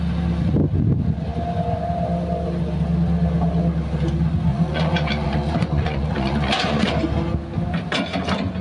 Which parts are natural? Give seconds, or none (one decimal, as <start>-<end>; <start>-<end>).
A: 0.0-4.5; 6.9-8.6